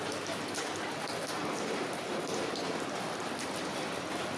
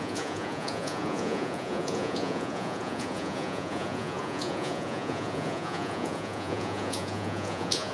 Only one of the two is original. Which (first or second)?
first